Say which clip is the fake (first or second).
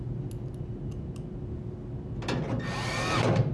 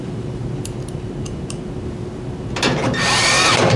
second